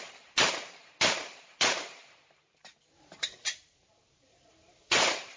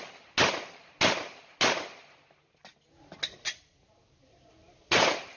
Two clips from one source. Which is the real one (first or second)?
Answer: second